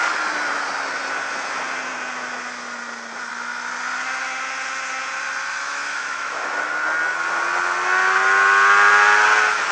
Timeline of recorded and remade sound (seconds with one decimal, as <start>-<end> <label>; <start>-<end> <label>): 0.0-5.4 recorded; 5.4-6.6 remade; 6.6-9.7 recorded